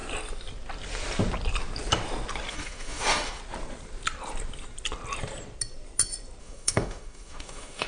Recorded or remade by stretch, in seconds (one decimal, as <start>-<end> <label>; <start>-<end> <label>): 0.0-2.5 recorded; 2.5-3.4 remade; 3.4-6.4 recorded; 6.4-7.9 remade